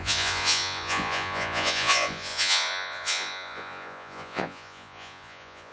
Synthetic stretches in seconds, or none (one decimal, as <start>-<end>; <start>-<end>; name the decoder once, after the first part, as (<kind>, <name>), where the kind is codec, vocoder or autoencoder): 0.0-5.7 (vocoder, Vocos)